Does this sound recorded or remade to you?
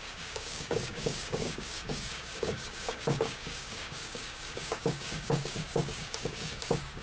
remade